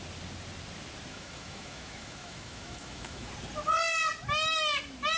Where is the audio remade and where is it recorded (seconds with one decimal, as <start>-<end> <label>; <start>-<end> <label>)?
0.0-1.1 recorded; 1.1-3.3 remade; 3.3-5.2 recorded

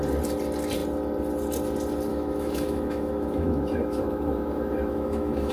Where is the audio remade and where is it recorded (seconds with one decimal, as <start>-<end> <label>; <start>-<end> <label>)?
0.0-2.1 recorded; 2.1-5.5 remade

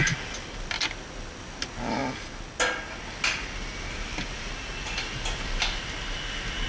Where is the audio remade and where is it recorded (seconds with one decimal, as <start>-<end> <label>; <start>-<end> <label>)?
0.0-6.7 recorded

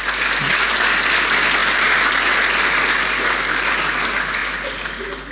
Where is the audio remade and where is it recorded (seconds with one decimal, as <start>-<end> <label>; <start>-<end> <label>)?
0.0-5.3 recorded

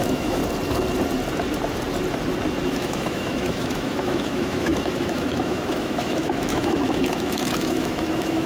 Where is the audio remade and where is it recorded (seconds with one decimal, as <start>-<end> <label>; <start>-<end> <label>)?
0.0-0.4 remade; 0.4-2.7 recorded; 2.7-8.5 remade